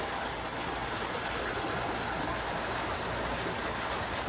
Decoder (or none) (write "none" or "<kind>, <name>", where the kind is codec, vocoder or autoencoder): none